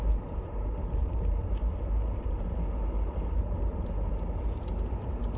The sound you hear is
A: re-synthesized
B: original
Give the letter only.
A